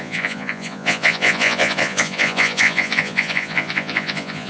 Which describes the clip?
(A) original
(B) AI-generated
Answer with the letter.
B